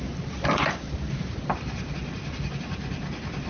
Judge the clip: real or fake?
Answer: real